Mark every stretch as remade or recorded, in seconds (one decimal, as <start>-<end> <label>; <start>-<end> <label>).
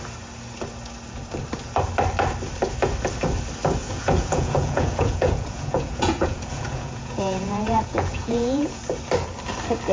0.0-3.8 recorded; 3.8-8.8 remade; 8.8-9.9 recorded